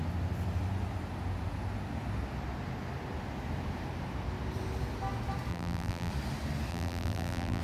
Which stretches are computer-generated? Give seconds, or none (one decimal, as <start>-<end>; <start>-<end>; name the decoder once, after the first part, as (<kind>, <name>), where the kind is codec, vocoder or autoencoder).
5.5-6.1 (vocoder, BigVGAN v2); 6.7-7.6